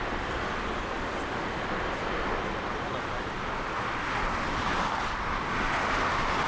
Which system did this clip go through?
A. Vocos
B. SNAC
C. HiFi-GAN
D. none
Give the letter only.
D